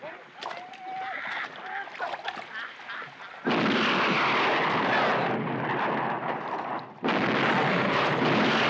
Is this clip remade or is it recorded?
recorded